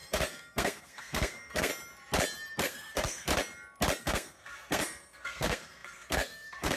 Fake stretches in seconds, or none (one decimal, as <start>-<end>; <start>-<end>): 0.0-1.7; 2.6-3.3; 4.0-6.8